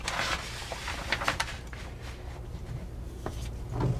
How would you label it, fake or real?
real